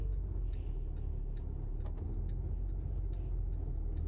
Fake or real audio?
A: real